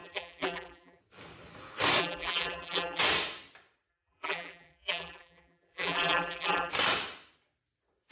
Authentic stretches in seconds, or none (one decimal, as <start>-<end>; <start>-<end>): 1.0-2.0; 3.0-3.9; 6.7-8.1